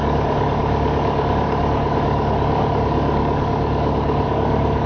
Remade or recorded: remade